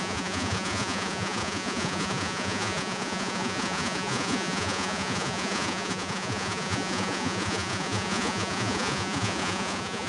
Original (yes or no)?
no